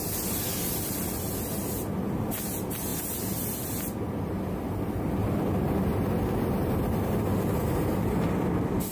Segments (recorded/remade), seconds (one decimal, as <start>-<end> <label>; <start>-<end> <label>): 0.0-8.9 recorded